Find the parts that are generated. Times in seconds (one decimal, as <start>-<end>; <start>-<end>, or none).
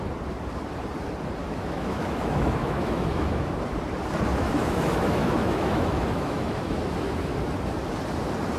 1.4-3.5; 4.3-7.4